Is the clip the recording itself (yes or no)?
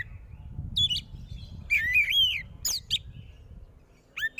yes